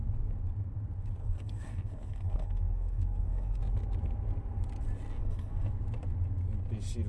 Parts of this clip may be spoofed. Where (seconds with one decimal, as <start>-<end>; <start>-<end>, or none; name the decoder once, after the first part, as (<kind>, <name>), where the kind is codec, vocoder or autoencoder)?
1.2-3.6 (codec, SNAC); 5.2-5.7